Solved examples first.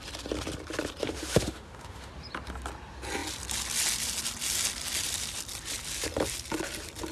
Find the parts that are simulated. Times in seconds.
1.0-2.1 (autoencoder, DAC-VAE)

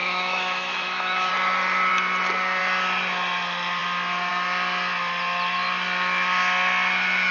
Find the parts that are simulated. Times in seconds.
0.0-1.3 (autoencoder, DAC-VAE)

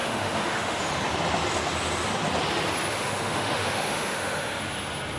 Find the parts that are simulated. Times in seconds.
0.0-0.8 (autoencoder, DAC-VAE); 2.9-4.6

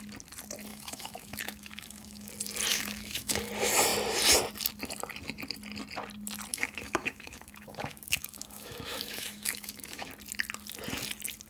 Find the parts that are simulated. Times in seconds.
0.7-2.3 (autoencoder, DAC-VAE); 2.7-3.5; 6.5-10.1